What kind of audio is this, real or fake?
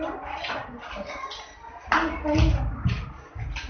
real